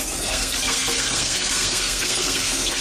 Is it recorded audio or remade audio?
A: remade